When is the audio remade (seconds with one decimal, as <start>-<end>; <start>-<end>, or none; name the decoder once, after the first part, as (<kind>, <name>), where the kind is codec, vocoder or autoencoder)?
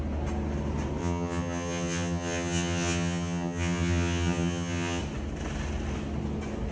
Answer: 1.0-5.0 (vocoder, HiFi-GAN)